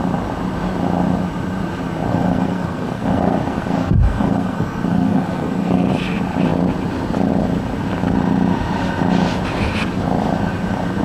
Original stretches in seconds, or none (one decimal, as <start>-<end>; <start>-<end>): 0.0-2.1; 5.9-11.0

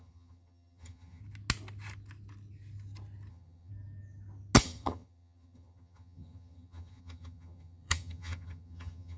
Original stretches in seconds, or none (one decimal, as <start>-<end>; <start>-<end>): 1.2-3.3; 3.7-4.6

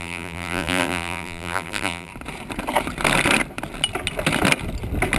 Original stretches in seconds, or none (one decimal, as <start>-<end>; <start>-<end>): 2.1-5.2

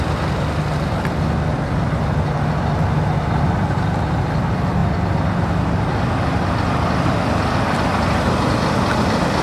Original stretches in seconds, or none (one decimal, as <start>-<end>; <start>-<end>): 0.0-9.4